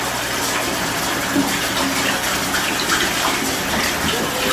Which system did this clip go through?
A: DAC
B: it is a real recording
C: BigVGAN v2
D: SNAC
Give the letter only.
B